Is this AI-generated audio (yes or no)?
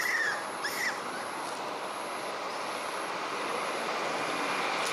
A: no